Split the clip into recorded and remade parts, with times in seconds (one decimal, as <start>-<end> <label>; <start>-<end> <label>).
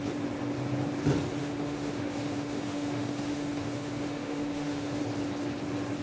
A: 0.0-1.4 recorded; 1.4-5.0 remade; 5.0-6.0 recorded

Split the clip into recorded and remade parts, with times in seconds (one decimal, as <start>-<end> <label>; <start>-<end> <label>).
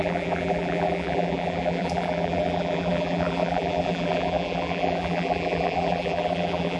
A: 0.0-6.8 remade